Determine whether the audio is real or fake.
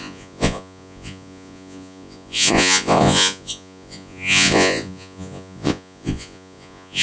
fake